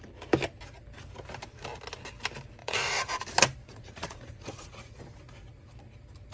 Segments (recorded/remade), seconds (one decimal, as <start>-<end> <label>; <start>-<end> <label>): 0.0-2.6 recorded; 2.6-3.2 remade; 3.2-3.6 recorded; 3.6-4.9 remade; 4.9-6.3 recorded